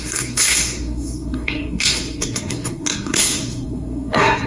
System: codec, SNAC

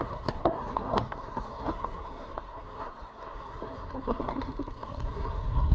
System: codec, SNAC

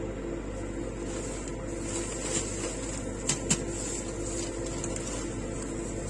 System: none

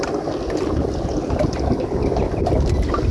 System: none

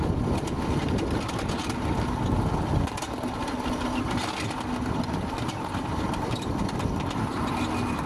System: none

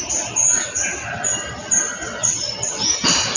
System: none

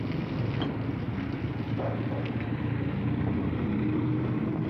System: none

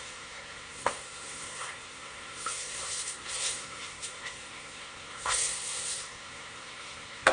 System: codec, SNAC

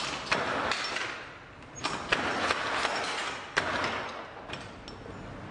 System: none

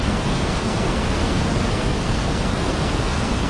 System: codec, SNAC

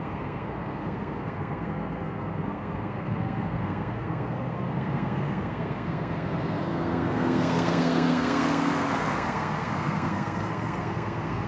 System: codec, SNAC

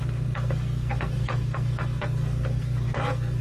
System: codec, SNAC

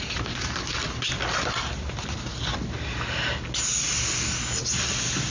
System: none